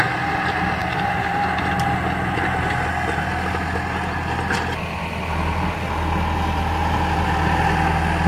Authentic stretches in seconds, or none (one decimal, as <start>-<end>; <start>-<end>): 0.0-0.8; 1.6-8.3